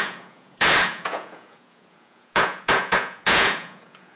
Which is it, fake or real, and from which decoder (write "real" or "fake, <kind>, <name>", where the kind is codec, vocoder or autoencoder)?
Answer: fake, vocoder, Vocos